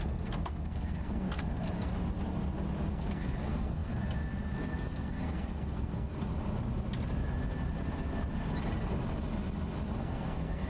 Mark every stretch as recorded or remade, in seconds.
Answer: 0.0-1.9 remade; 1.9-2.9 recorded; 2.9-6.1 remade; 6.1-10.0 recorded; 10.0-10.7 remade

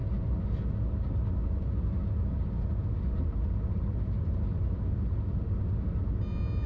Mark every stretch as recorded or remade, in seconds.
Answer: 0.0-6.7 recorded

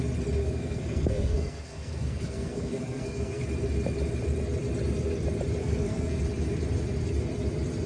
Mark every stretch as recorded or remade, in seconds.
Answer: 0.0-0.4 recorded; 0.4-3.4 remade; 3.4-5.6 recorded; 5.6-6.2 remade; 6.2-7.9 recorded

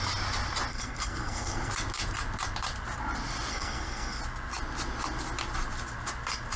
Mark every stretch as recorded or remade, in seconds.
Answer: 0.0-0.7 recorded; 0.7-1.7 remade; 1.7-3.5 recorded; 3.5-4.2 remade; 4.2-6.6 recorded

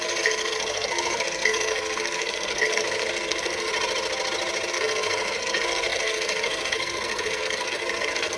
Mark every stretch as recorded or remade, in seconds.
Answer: 0.0-3.7 remade; 3.7-4.7 recorded; 4.7-8.4 remade